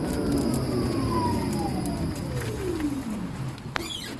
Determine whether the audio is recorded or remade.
recorded